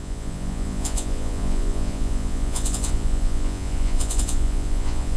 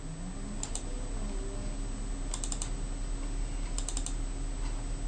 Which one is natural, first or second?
second